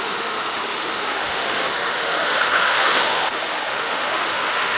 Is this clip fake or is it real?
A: fake